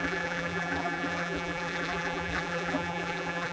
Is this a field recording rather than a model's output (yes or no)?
no